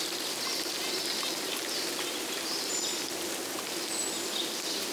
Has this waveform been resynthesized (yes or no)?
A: no